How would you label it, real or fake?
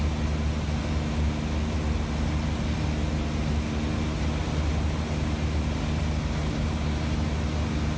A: real